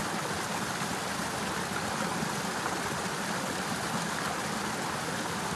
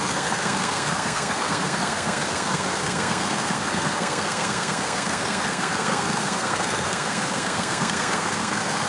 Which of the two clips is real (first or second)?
first